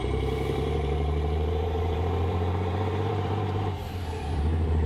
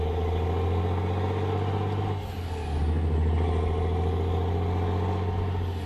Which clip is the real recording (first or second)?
second